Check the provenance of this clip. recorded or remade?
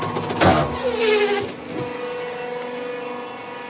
recorded